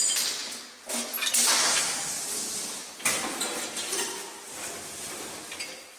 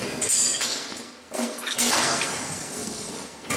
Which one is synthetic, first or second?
second